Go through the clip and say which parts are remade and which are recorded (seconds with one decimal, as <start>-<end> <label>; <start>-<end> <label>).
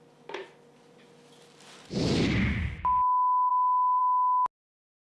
0.0-5.2 recorded